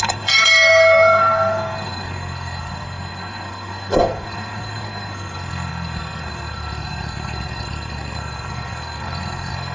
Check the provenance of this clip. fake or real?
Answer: fake